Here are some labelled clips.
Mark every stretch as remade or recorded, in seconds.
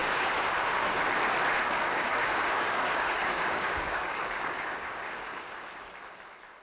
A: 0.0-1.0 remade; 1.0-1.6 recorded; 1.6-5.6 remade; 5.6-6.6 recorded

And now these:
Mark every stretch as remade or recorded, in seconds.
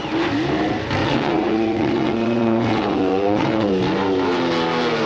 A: 0.0-1.0 recorded; 1.0-3.7 remade; 3.7-5.1 recorded